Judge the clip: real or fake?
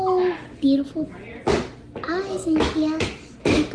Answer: real